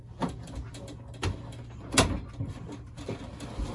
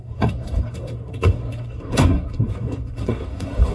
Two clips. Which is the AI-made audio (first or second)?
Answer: second